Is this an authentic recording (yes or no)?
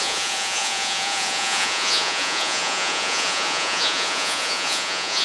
no